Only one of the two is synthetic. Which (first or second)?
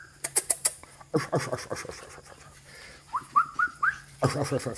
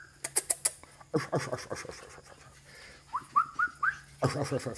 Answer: first